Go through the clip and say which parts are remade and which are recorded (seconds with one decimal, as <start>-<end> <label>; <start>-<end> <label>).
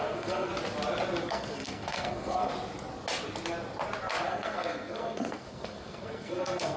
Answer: 0.0-0.5 remade; 0.5-1.3 recorded; 1.3-2.5 remade; 2.5-4.3 recorded; 4.3-6.8 remade